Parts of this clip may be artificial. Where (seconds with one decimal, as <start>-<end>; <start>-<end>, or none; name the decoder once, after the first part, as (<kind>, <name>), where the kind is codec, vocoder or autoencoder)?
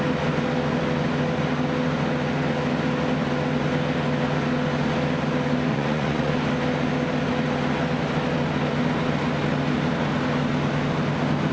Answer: 5.7-6.3 (vocoder, Vocos)